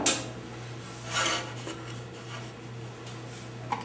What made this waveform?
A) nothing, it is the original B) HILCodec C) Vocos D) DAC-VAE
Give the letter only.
A